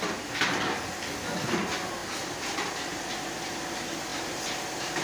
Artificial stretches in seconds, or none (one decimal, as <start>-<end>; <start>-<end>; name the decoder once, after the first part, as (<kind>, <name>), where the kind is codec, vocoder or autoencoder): 2.0-3.1 (vocoder, BigVGAN v2)

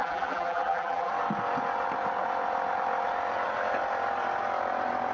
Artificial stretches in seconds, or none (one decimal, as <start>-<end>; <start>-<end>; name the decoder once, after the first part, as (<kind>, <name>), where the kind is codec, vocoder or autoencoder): 0.0-1.1 (vocoder, BigVGAN v2)

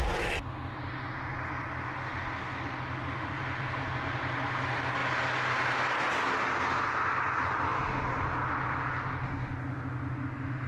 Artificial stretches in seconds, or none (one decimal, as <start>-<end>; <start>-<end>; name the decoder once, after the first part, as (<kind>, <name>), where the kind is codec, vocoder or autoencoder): none

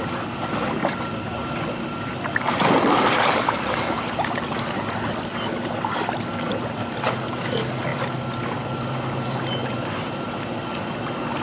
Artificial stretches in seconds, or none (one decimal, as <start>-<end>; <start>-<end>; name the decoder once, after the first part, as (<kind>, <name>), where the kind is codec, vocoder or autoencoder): 0.8-3.4 (vocoder, BigVGAN v2)

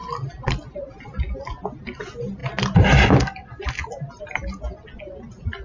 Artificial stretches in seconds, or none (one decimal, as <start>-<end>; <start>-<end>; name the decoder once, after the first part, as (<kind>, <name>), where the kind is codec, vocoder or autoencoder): none

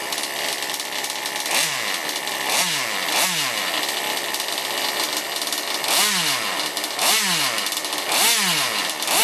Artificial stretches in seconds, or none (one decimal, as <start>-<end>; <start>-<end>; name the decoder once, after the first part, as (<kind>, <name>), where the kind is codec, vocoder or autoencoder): none